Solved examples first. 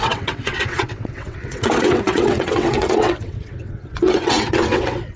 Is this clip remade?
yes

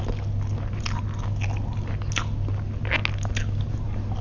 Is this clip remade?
no